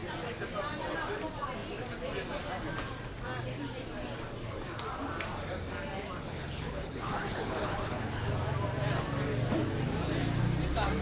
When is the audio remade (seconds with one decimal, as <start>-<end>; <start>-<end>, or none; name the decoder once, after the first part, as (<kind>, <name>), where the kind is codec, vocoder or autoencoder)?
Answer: 6.3-8.3 (codec, HILCodec)